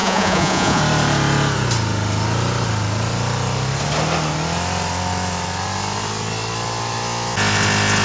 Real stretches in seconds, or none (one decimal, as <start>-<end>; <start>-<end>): 0.8-8.0